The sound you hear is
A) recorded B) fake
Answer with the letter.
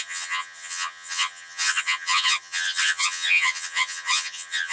B